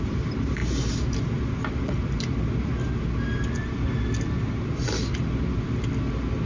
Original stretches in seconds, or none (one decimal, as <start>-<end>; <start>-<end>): 0.0-6.5